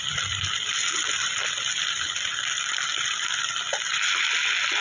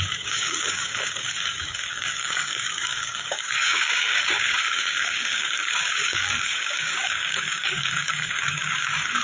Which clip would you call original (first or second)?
first